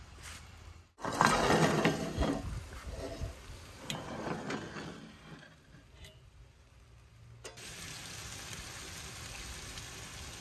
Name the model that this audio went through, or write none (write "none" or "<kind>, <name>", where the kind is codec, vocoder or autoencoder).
none